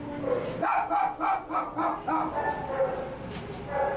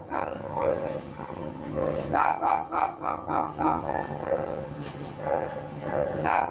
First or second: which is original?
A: first